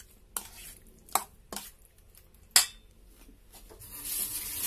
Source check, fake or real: real